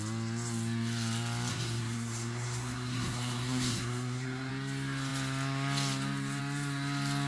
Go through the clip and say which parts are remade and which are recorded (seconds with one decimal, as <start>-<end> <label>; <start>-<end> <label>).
0.0-1.5 recorded; 1.5-4.5 remade; 4.5-7.3 recorded